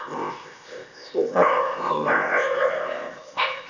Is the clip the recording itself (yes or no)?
no